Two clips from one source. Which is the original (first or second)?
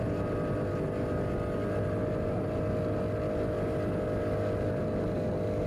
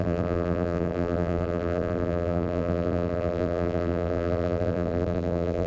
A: first